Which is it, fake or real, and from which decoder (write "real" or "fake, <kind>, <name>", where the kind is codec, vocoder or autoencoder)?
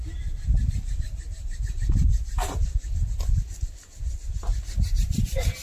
real